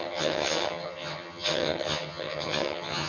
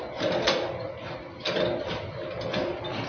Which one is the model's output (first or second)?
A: first